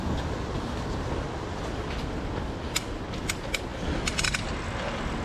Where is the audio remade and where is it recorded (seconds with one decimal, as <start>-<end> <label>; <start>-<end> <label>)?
0.0-5.2 recorded

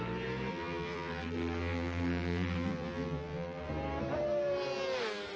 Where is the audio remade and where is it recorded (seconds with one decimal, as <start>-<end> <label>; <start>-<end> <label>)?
0.0-0.5 recorded; 0.5-3.7 remade; 3.7-5.4 recorded